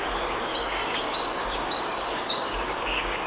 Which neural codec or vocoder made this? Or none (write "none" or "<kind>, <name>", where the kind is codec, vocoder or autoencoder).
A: codec, DAC